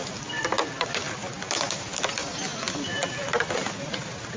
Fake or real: real